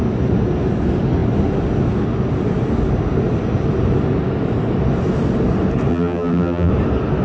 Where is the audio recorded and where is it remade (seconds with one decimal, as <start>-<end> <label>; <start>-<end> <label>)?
0.0-5.9 recorded; 5.9-6.7 remade; 6.7-7.2 recorded